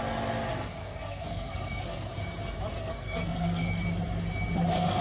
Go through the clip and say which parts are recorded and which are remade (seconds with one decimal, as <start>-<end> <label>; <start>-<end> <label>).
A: 0.0-0.8 recorded; 0.8-2.1 remade; 2.1-2.8 recorded; 2.8-3.8 remade; 3.8-5.0 recorded